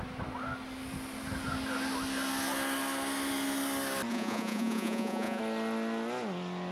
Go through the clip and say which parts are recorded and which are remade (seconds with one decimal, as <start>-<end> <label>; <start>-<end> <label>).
0.0-4.1 recorded; 4.1-5.4 remade; 5.4-6.7 recorded